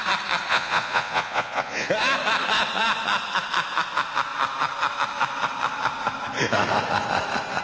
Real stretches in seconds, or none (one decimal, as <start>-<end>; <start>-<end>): 0.0-0.5; 1.9-7.6